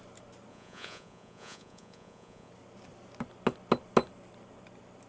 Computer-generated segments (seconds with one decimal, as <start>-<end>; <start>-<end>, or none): 0.5-2.5